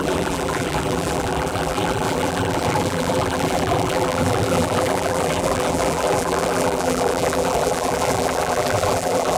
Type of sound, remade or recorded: remade